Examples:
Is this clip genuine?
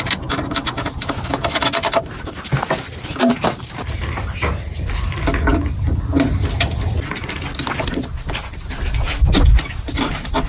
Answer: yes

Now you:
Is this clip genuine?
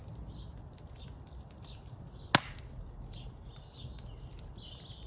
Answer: yes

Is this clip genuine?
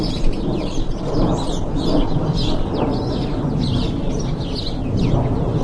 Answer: yes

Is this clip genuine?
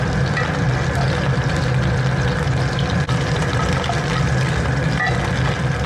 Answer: yes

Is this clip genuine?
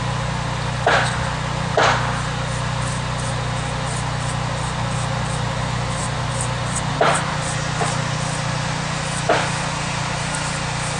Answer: yes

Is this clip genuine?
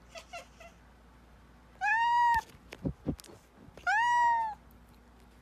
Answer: yes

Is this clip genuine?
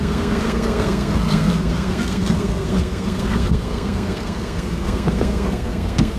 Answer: no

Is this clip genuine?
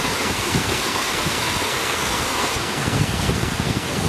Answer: no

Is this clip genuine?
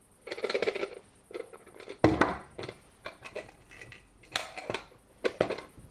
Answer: yes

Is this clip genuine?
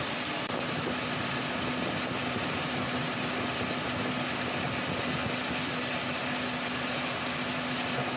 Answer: yes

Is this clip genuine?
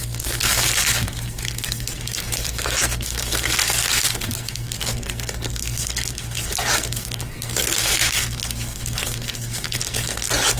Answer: no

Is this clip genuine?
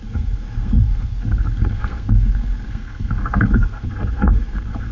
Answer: no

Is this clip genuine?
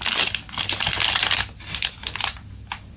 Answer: yes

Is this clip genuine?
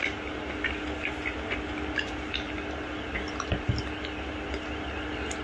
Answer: yes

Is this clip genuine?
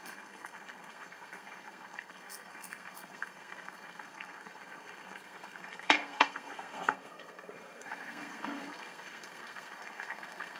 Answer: no